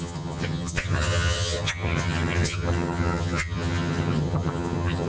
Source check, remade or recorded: remade